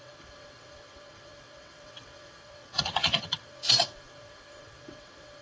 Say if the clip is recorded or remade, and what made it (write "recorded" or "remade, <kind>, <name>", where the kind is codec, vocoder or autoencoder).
remade, vocoder, WaveNeXt